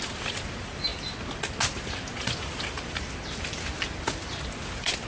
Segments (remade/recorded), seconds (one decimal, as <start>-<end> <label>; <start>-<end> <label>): 0.0-5.1 recorded